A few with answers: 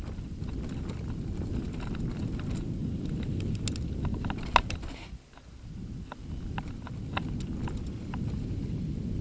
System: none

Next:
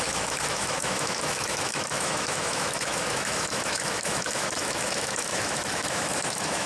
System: autoencoder, DAC-VAE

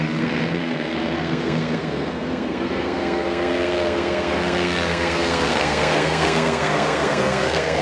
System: codec, SNAC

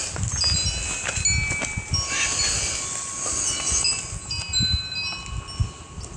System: none